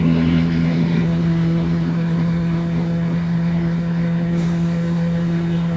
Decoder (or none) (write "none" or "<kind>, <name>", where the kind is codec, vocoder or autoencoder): codec, SNAC